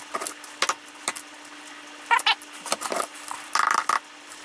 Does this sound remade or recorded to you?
recorded